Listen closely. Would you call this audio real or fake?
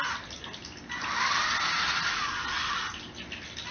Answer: real